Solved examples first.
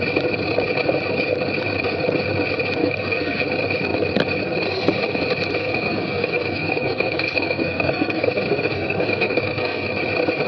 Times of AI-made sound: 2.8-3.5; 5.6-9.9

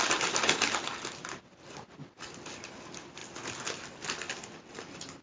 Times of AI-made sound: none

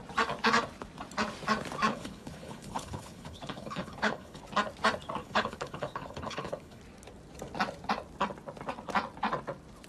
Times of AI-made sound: 1.9-4.4; 5.2-6.8

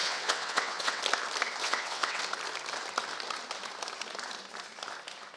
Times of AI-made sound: 0.0-1.0; 1.6-2.2

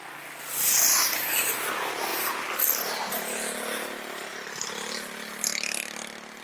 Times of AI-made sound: 0.6-1.3; 4.3-5.4

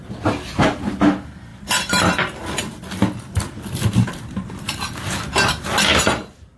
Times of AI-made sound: 1.5-4.1

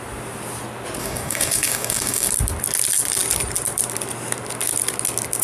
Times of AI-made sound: 1.0-2.3

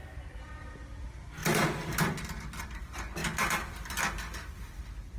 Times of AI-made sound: none